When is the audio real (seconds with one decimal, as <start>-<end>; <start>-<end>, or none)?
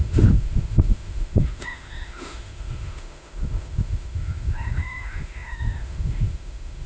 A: none